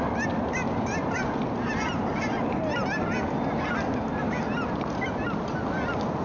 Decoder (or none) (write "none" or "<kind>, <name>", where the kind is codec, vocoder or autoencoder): none